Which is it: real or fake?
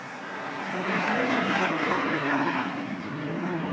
fake